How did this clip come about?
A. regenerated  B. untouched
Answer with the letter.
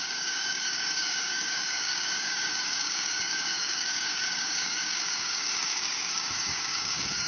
A